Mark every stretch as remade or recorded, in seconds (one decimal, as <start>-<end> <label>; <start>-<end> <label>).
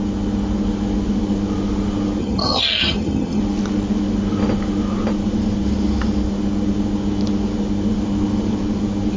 0.0-2.2 recorded; 2.2-3.4 remade; 3.4-9.2 recorded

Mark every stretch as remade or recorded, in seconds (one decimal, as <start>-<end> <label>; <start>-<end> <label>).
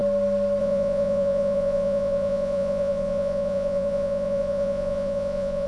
0.0-0.6 recorded; 0.6-5.7 remade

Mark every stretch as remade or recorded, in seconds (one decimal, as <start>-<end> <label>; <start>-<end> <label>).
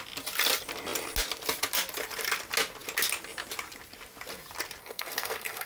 0.0-4.8 recorded; 4.8-5.7 remade